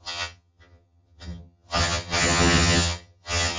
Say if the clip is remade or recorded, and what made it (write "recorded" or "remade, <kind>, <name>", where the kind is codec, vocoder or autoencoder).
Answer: remade, vocoder, HiFi-GAN